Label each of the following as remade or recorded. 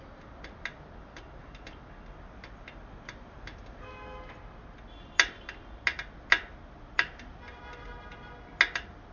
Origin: recorded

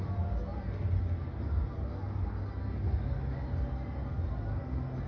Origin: recorded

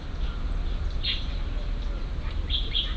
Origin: recorded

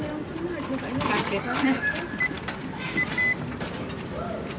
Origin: recorded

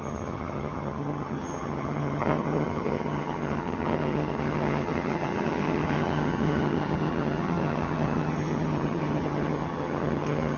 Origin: remade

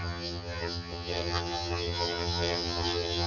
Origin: remade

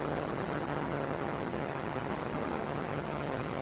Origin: remade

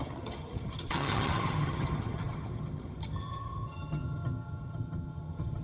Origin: remade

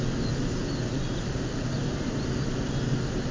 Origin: recorded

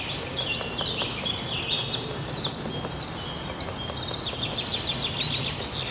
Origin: recorded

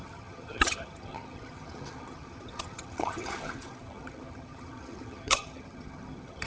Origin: remade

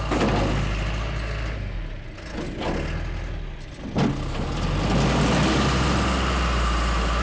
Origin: recorded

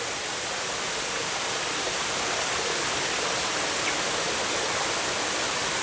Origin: recorded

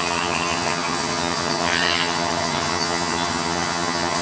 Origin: remade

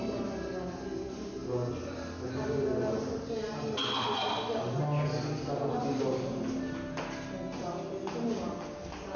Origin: recorded